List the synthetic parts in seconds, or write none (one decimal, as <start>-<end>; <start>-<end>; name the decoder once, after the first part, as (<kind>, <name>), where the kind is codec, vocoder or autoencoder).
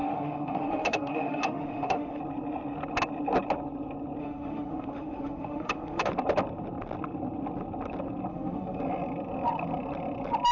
0.0-2.2 (autoencoder, DAC-VAE); 4.2-6.1; 8.3-8.8